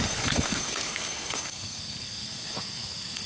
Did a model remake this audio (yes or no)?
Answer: yes